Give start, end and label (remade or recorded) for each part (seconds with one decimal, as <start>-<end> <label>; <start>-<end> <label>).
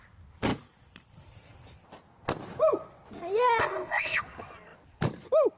0.0-3.6 recorded; 3.6-4.2 remade; 4.2-5.6 recorded